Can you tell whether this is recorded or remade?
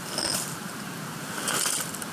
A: recorded